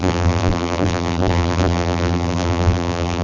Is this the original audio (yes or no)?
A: no